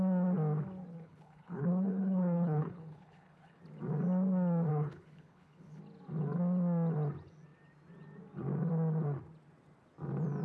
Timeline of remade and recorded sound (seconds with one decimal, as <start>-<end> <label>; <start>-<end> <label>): 0.0-0.9 recorded; 0.9-3.6 remade; 3.6-4.7 recorded; 4.7-5.8 remade; 5.8-10.4 recorded